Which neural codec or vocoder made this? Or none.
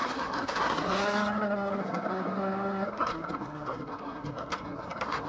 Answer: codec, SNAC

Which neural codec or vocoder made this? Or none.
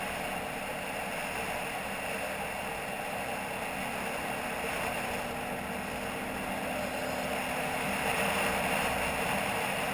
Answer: none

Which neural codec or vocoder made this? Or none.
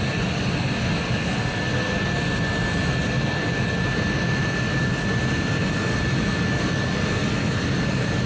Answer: none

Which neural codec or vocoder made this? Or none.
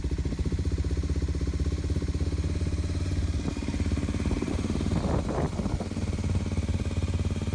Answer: none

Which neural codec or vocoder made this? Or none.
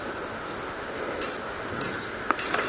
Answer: none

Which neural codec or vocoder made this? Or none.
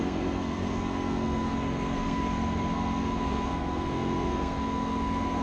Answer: codec, SNAC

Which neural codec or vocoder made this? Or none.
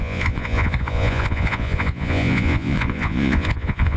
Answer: vocoder, Vocos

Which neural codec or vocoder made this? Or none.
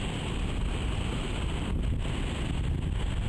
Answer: none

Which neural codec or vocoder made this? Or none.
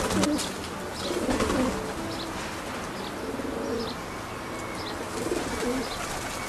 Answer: none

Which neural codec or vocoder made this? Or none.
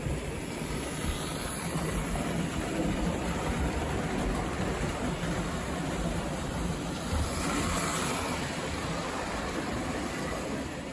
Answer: vocoder, BigVGAN v2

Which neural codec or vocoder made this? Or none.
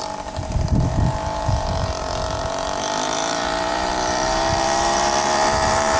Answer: vocoder, BigVGAN v2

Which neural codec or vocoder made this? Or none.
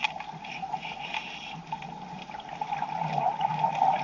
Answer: none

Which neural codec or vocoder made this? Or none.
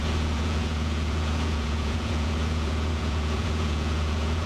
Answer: vocoder, Vocos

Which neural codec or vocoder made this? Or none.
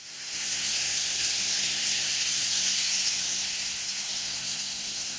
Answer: codec, SNAC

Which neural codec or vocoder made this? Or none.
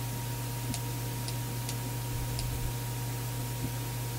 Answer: none